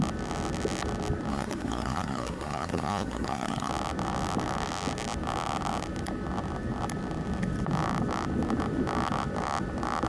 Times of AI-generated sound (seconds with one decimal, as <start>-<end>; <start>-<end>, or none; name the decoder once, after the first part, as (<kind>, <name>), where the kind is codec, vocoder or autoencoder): 1.3-3.7 (codec, SNAC)

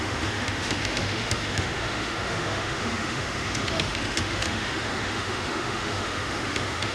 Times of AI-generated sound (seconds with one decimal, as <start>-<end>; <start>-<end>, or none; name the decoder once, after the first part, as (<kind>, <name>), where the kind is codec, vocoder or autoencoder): 0.0-6.9 (autoencoder, DAC-VAE)

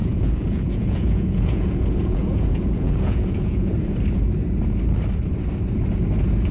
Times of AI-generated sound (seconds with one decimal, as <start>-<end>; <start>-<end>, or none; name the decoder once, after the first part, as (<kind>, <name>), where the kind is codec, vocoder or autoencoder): 0.0-3.7 (vocoder, Vocos)

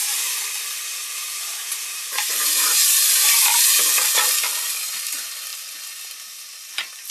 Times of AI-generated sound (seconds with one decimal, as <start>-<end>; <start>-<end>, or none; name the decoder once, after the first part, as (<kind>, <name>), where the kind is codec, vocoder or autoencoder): 1.1-2.8 (vocoder, BigVGAN v2)

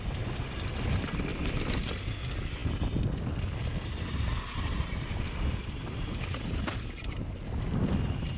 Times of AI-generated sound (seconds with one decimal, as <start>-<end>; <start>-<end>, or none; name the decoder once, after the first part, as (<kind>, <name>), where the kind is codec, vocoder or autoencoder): none

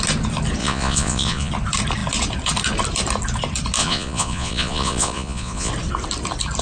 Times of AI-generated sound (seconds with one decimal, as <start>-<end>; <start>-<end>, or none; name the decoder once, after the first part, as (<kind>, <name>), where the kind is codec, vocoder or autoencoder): 0.6-1.5 (vocoder, Vocos); 3.8-5.7

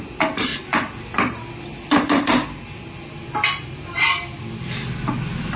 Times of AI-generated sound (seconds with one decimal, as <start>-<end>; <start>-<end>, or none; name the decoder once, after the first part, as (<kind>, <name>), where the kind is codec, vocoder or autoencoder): none

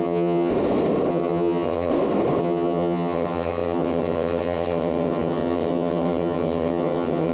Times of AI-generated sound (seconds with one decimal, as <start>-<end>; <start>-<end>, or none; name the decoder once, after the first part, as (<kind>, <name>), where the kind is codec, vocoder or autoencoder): 0.0-0.5 (vocoder, HiFi-GAN); 1.1-1.9; 2.4-7.3